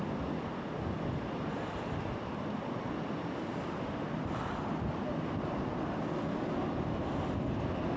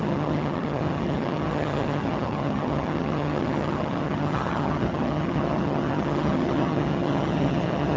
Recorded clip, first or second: first